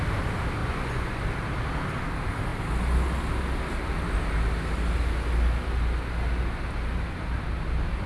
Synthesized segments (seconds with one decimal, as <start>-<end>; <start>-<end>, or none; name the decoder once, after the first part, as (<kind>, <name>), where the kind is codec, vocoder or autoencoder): 0.6-1.2 (vocoder, Vocos)

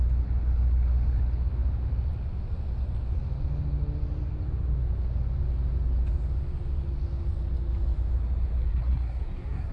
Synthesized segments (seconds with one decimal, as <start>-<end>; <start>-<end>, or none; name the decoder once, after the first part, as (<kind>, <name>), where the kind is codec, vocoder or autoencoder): 8.7-9.7 (codec, SNAC)

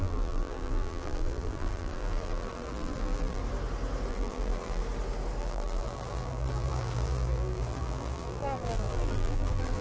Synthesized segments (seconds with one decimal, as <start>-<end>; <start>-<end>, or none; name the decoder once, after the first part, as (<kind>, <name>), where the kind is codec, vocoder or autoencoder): 0.0-3.4 (vocoder, BigVGAN v2); 4.1-4.8; 5.4-9.8